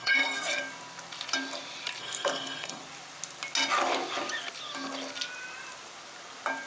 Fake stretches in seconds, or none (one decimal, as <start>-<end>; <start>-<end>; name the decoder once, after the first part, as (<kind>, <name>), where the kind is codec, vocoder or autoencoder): 0.0-0.6 (codec, SNAC); 2.0-2.8